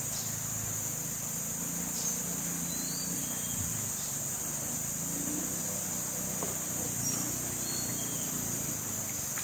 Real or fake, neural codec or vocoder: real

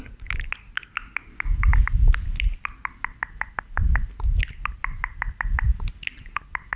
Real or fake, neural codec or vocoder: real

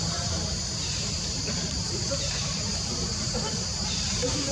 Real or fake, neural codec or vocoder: fake, vocoder, BigVGAN v2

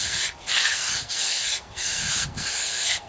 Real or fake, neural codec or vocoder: fake, codec, SNAC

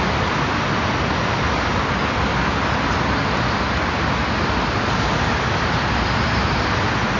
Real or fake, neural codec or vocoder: real